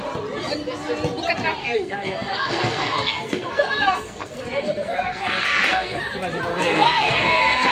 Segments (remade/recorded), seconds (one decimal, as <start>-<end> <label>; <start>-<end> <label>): 0.0-1.6 recorded; 1.6-6.0 remade; 6.0-6.5 recorded; 6.5-7.7 remade